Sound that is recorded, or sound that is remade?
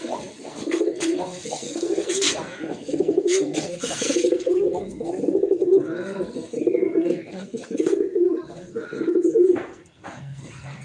remade